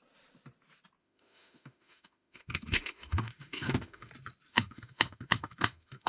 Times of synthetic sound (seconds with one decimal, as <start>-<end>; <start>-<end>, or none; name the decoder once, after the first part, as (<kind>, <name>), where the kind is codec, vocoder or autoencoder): 1.0-4.1 (autoencoder, DAC-VAE); 4.5-6.1